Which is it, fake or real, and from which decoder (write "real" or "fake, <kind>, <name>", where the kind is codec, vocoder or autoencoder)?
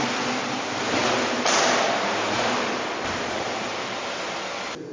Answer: real